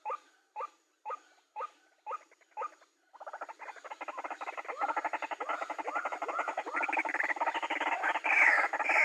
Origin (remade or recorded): recorded